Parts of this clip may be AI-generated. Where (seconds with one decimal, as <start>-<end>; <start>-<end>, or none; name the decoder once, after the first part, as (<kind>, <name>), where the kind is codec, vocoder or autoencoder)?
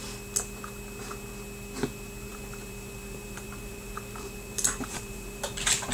2.3-5.9 (vocoder, BigVGAN v2)